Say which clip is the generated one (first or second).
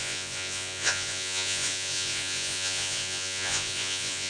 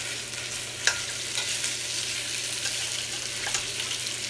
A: first